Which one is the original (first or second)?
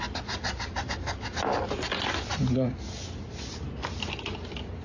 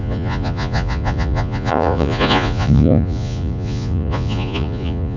first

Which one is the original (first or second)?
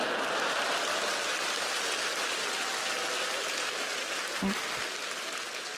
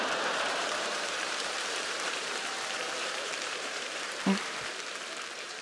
first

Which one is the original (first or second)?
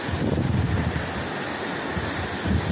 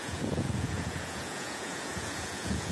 first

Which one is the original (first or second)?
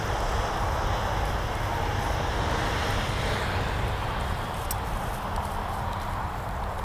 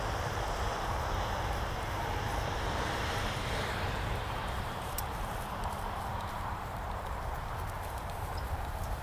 first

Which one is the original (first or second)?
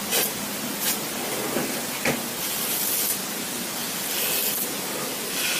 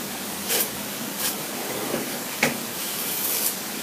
first